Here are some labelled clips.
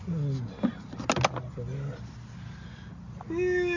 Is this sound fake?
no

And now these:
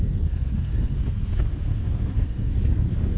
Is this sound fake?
yes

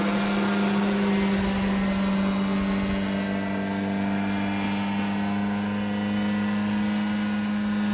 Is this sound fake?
no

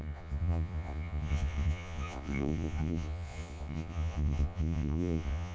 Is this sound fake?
yes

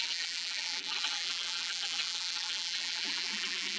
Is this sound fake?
yes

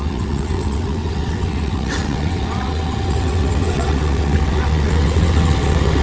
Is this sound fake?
yes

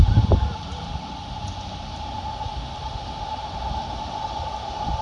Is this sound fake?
no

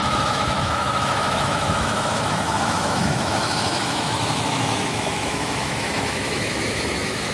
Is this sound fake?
yes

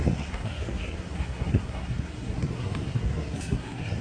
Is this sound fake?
yes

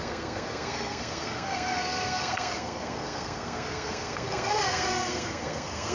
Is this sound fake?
yes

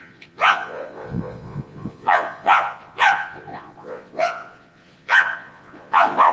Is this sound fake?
yes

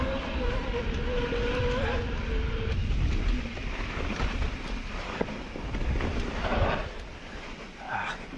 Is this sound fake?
no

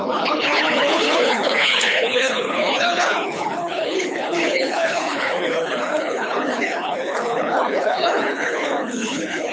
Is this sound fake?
yes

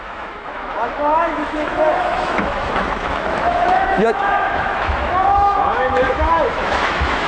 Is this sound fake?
yes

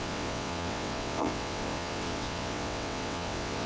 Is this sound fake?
yes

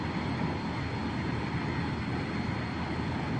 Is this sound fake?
no